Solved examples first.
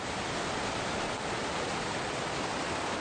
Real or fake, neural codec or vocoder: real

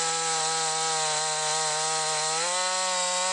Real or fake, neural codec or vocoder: real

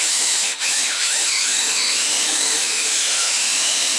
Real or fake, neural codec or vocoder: fake, autoencoder, DAC-VAE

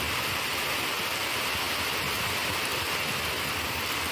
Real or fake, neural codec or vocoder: fake, vocoder, BigVGAN v2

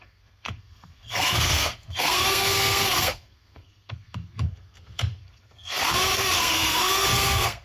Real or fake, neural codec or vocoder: fake, codec, SNAC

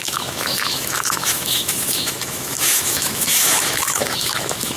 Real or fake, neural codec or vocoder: fake, autoencoder, DAC-VAE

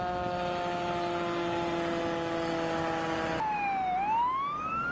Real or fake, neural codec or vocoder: real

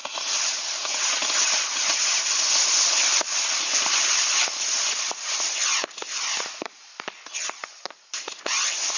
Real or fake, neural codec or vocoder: real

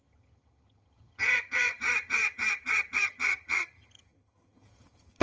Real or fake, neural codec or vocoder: fake, vocoder, HiFi-GAN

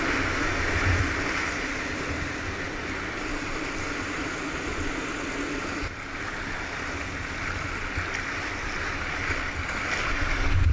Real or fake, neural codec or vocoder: real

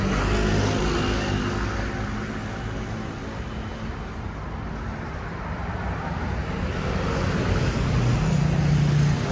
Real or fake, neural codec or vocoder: real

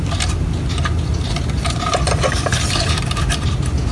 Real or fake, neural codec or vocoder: real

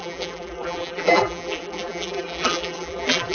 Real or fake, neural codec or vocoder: fake, vocoder, BigVGAN v2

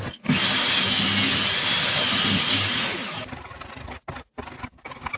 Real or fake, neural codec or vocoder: real